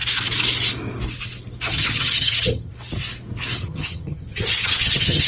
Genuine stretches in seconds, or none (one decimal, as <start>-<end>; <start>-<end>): 0.0-1.7; 2.7-3.6